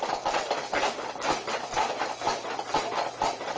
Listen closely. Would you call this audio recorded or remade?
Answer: recorded